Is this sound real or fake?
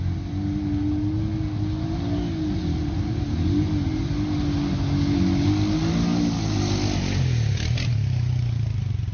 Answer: real